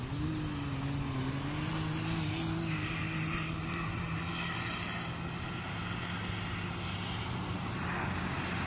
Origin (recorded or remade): recorded